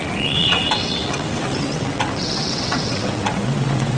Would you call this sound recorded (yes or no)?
no